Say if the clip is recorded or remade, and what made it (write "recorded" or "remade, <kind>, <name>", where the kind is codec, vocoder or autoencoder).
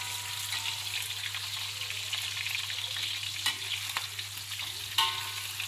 recorded